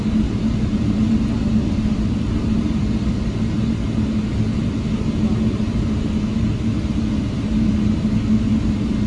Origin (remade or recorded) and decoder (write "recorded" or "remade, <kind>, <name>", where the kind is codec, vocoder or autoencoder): recorded